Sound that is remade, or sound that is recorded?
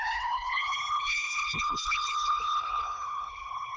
remade